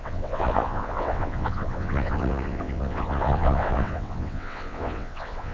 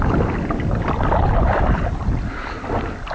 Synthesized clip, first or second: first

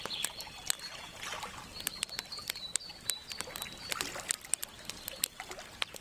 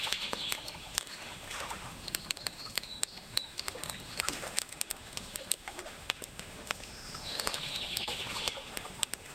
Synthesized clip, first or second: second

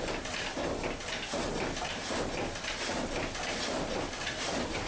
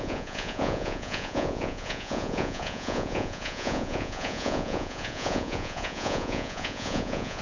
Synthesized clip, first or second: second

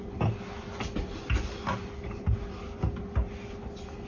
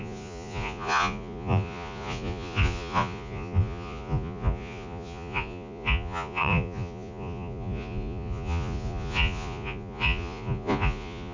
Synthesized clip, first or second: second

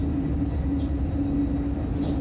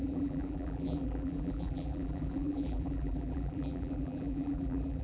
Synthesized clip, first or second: second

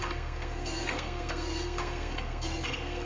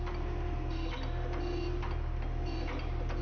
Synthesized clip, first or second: first